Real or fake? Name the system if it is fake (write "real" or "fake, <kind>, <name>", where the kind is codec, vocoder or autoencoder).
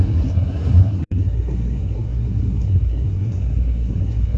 fake, codec, SNAC